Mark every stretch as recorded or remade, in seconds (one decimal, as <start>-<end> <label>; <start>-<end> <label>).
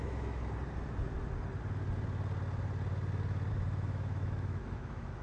0.0-0.4 remade; 0.4-3.5 recorded; 3.5-5.2 remade